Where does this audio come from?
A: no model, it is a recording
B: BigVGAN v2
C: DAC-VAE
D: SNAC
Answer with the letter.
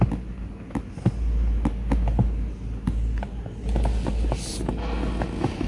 A